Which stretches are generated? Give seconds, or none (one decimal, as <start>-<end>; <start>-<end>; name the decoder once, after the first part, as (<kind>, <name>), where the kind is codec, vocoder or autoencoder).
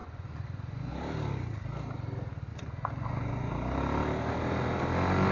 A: 0.0-0.9 (vocoder, Vocos); 2.5-3.5